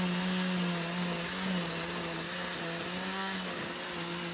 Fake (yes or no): no